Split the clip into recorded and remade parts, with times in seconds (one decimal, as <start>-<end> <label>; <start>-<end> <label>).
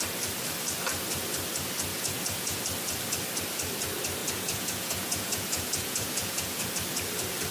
0.0-1.9 recorded; 1.9-2.6 remade; 2.6-4.2 recorded; 4.2-6.7 remade; 6.7-7.5 recorded